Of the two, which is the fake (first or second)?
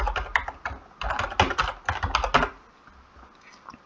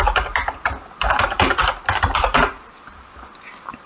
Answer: second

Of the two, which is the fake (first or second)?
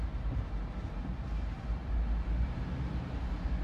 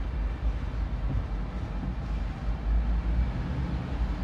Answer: first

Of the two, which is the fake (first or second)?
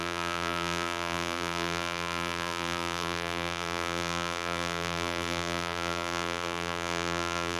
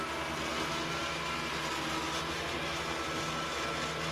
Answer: first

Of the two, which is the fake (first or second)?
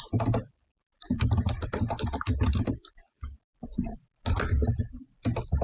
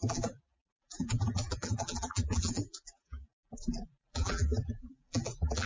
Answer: second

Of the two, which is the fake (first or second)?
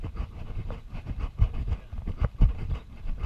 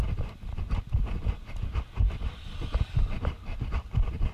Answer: first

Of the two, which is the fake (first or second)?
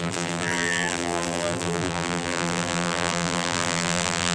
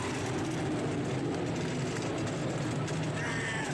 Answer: first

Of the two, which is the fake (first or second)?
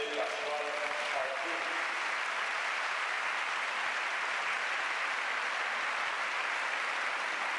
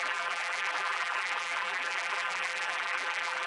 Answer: second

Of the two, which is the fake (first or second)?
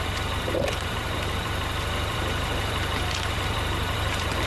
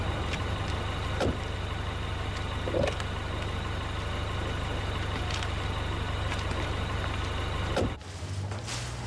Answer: first